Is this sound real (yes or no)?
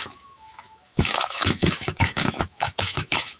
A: no